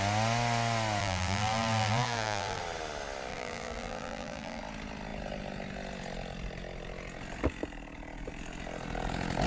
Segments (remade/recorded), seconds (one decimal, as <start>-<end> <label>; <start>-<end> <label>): 0.0-1.0 recorded; 1.0-2.6 remade; 2.6-3.3 recorded; 3.3-4.6 remade; 4.6-9.5 recorded